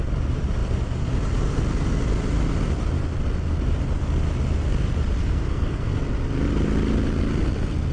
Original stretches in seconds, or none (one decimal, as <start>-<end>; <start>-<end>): 0.0-5.2; 5.9-7.9